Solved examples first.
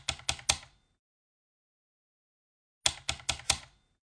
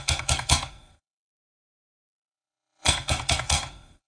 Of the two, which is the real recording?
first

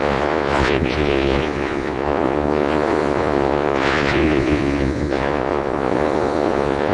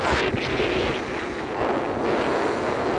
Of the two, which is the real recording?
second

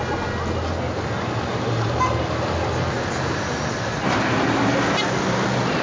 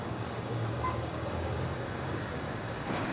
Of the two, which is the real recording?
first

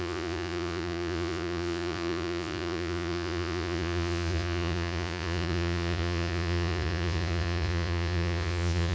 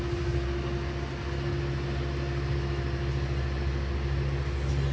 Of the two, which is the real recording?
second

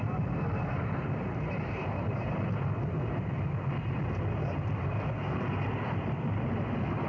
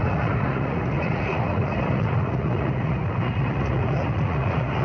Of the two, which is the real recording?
first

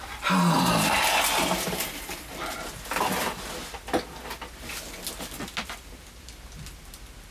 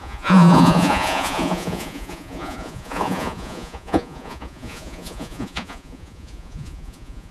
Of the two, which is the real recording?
first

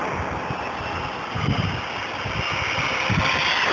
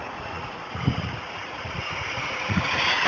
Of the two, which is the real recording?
first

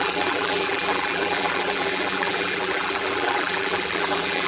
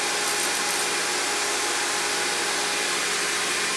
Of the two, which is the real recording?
second